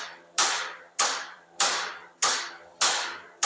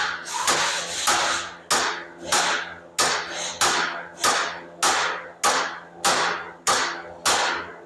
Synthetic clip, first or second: first